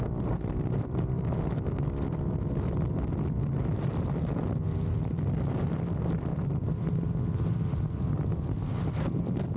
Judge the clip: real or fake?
fake